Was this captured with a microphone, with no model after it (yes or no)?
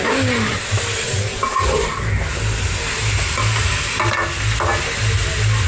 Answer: yes